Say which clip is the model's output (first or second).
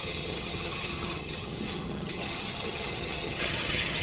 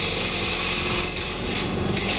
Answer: first